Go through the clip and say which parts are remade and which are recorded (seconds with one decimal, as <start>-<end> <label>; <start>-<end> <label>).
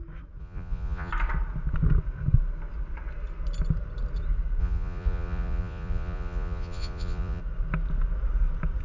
0.0-0.4 recorded; 0.4-1.1 remade; 1.1-4.6 recorded; 4.6-7.4 remade; 7.4-8.8 recorded